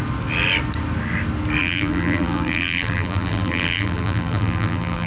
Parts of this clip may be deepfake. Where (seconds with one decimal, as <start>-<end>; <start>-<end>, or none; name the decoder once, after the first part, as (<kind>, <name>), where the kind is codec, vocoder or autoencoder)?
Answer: 1.6-5.1 (vocoder, BigVGAN v2)